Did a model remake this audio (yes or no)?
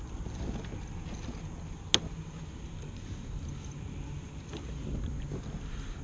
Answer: no